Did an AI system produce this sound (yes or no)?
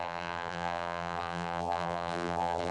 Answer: yes